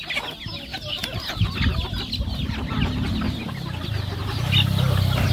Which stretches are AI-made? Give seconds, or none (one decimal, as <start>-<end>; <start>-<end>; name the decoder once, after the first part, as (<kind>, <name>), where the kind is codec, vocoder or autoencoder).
0.7-1.5 (vocoder, BigVGAN v2)

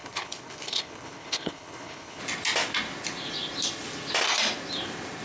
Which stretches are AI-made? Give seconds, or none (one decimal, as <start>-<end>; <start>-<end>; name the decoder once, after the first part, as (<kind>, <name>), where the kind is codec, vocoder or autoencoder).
0.0-2.2 (codec, HILCodec)

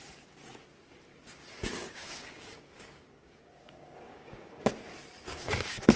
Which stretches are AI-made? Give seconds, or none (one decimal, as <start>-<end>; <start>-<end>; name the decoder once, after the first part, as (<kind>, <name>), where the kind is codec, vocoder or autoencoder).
1.1-4.7 (codec, DAC); 5.3-6.0

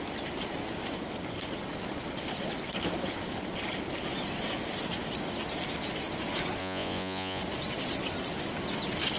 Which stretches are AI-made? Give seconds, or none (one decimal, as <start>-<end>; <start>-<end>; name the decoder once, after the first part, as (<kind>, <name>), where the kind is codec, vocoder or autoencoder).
6.6-7.4 (vocoder, Vocos)

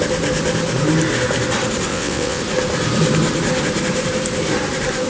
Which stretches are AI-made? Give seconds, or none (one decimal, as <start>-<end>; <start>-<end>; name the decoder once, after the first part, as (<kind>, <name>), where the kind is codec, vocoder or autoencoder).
1.9-2.4 (vocoder, WaveNeXt)

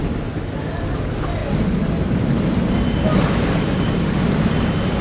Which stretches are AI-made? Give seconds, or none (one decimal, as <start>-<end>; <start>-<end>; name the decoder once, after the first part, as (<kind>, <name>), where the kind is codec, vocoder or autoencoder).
none

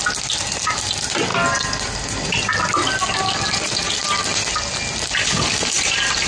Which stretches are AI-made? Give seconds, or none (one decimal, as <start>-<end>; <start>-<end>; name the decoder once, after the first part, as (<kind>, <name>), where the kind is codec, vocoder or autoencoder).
none